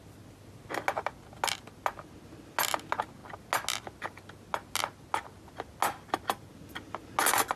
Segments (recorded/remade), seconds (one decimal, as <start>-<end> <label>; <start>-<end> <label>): 0.0-7.6 recorded